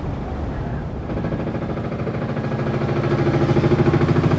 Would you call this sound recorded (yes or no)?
yes